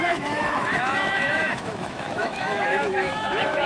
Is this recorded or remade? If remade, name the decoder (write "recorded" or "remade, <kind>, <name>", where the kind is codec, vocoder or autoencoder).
remade, autoencoder, DAC-VAE